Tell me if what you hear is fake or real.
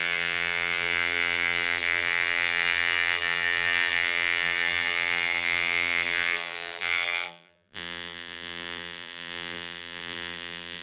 fake